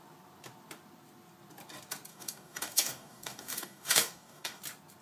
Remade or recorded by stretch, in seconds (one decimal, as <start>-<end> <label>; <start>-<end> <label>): 0.0-2.1 recorded; 2.1-4.6 remade; 4.6-5.0 recorded